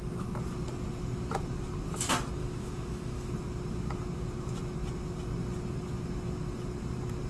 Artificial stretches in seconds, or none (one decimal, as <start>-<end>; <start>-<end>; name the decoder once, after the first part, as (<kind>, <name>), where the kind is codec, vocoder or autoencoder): 2.4-3.3 (autoencoder, DAC-VAE)

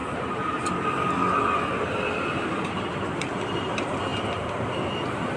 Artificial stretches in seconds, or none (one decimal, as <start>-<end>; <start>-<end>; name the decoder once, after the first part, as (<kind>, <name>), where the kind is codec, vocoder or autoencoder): none

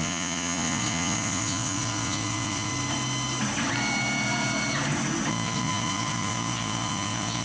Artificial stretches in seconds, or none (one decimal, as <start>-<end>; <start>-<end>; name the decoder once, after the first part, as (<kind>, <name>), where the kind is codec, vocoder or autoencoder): 0.0-2.7 (vocoder, Vocos); 5.3-7.4

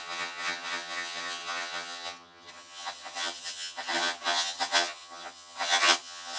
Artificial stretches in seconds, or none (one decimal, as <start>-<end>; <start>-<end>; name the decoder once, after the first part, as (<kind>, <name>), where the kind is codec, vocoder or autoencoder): 0.0-6.4 (vocoder, HiFi-GAN)

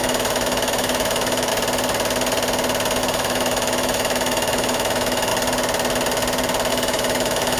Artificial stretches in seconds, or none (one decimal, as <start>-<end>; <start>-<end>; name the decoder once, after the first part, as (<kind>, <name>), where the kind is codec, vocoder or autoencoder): 0.0-1.5 (autoencoder, DAC-VAE); 3.0-5.3; 6.7-7.6

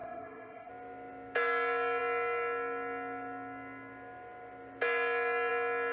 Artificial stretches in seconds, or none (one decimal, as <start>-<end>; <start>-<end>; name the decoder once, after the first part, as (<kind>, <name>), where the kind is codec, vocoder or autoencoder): 0.0-0.7 (codec, SNAC)

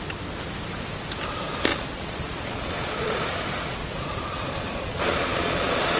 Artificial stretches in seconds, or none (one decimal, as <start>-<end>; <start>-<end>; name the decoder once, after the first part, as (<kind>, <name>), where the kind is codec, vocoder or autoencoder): 1.7-3.3 (vocoder, Vocos); 3.8-6.0

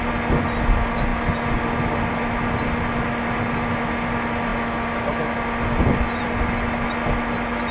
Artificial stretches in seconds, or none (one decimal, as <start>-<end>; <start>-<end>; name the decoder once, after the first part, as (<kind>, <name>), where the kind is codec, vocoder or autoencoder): none